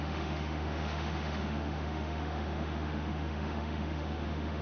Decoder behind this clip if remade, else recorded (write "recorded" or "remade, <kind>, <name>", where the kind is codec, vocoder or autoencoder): remade, autoencoder, DAC-VAE